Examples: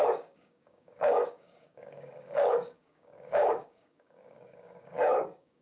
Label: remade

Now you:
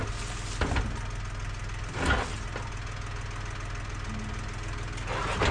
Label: recorded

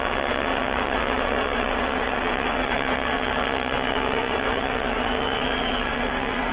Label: remade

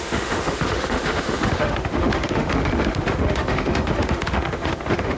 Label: remade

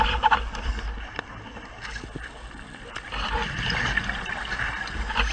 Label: recorded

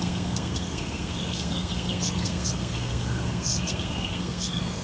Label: remade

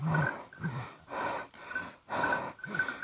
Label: recorded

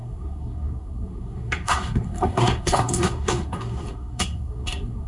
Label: remade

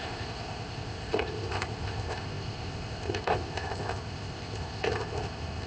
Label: remade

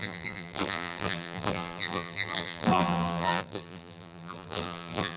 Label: remade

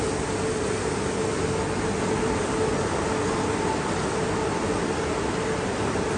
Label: recorded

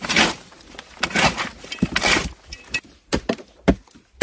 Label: recorded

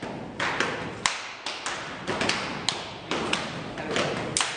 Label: recorded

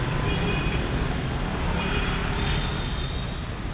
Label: recorded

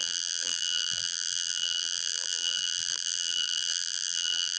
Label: remade